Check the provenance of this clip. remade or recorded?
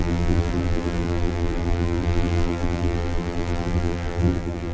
remade